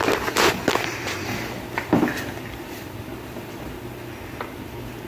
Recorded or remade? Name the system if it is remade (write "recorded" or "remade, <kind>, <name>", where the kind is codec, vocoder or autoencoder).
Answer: recorded